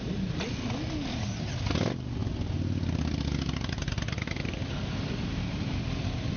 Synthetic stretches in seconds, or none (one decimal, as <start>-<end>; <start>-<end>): none